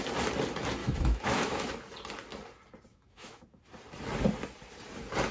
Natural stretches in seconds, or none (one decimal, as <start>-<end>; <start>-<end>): 0.0-0.8; 1.7-2.9; 3.6-5.3